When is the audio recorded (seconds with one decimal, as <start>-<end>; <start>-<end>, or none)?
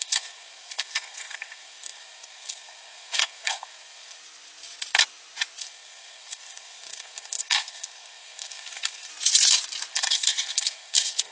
4.2-5.6; 9.1-9.9